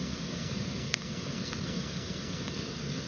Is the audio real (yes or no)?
no